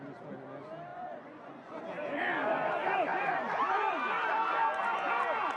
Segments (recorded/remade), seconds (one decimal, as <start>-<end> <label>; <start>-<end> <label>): 0.0-0.9 recorded; 0.9-1.8 remade; 1.8-5.6 recorded